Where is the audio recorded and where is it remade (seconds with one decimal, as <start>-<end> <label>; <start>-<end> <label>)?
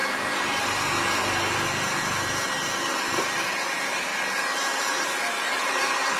0.0-2.8 recorded; 2.8-4.1 remade; 4.1-5.3 recorded; 5.3-6.2 remade